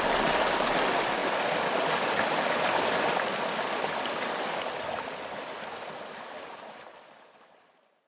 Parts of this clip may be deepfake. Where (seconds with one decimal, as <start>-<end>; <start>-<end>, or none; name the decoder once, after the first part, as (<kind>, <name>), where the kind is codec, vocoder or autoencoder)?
none